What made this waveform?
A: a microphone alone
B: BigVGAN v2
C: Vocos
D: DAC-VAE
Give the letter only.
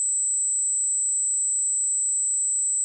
A